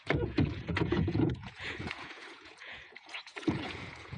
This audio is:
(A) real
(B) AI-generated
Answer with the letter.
B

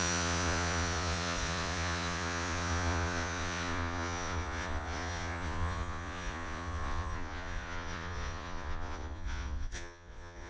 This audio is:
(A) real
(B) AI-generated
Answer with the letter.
B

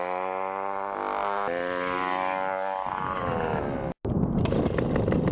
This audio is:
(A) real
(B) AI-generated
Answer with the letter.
A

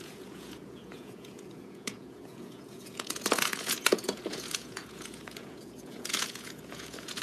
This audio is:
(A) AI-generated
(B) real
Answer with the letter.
A